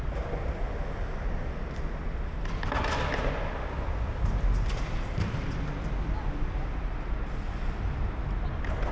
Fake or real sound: real